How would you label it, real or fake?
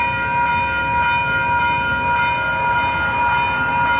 real